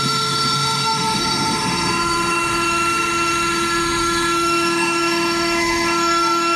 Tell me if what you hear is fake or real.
fake